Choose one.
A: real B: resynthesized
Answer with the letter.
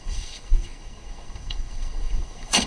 B